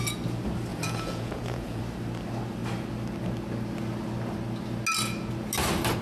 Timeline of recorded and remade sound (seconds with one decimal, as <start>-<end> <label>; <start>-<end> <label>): 0.0-0.7 recorded; 0.7-1.8 remade; 1.8-6.0 recorded